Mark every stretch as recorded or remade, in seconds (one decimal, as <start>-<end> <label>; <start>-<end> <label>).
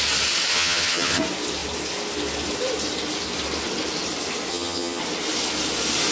0.0-0.5 recorded; 0.5-1.2 remade; 1.2-4.5 recorded; 4.5-5.0 remade; 5.0-6.1 recorded